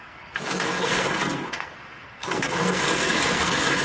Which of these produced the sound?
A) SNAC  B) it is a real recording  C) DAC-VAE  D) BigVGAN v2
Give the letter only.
A